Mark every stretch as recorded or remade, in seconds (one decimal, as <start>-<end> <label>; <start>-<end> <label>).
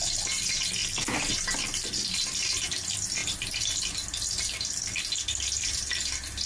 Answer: 0.0-6.5 recorded